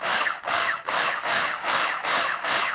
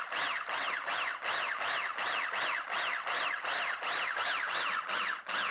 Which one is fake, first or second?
first